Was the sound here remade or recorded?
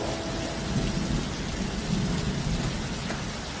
recorded